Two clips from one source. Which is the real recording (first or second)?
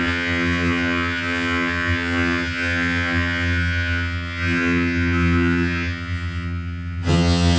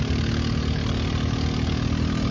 second